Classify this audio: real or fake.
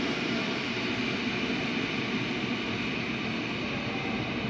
real